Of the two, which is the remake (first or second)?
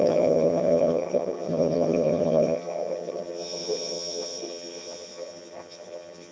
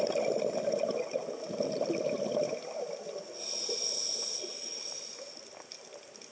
first